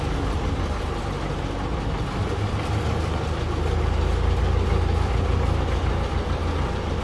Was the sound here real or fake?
real